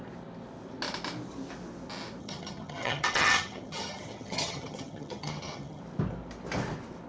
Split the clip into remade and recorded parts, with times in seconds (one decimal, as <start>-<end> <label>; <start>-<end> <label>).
0.0-2.2 recorded; 2.2-5.8 remade; 5.8-7.1 recorded